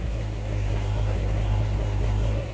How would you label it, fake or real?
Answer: fake